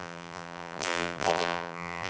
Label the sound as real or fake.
fake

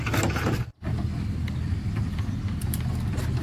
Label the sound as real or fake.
real